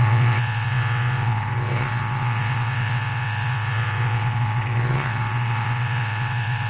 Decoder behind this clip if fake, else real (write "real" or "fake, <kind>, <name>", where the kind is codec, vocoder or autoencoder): fake, vocoder, WaveNeXt